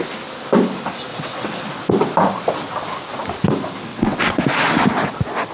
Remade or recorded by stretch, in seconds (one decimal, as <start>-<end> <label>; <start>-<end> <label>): 0.0-1.1 recorded; 1.1-2.1 remade; 2.1-3.9 recorded; 3.9-4.4 remade; 4.4-5.5 recorded